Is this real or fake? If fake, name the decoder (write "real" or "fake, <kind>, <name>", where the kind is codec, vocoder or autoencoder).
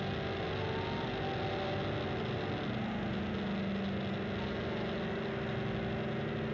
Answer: real